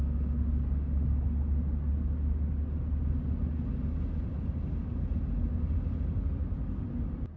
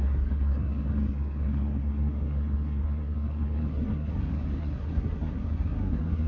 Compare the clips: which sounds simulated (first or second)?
second